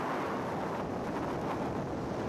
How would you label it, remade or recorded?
recorded